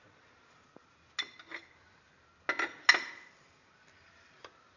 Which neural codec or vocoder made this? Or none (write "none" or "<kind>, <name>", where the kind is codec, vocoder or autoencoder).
none